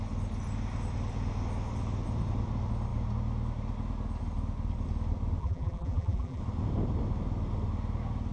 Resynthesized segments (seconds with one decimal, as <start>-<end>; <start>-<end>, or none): 5.4-6.4

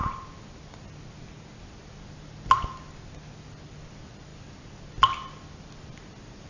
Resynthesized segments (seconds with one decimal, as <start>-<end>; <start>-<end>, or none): none

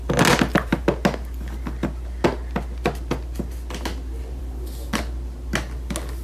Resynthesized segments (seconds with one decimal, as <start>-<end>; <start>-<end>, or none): none

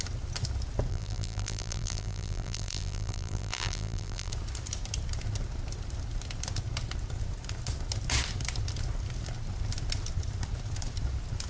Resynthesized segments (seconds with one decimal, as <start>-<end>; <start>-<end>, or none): 0.9-4.3